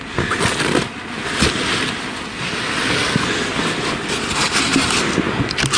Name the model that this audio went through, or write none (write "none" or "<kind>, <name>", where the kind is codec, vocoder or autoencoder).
none